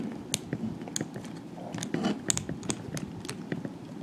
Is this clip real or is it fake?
real